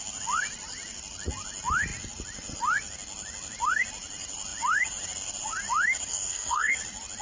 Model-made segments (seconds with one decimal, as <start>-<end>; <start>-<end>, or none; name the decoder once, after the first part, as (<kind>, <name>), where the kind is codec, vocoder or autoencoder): 6.1-6.8 (codec, SNAC)